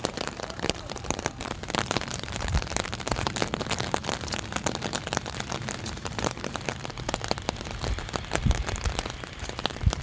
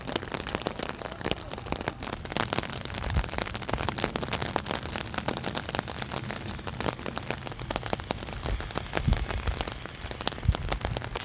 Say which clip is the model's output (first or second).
first